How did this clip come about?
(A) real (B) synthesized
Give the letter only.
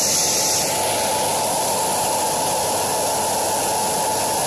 A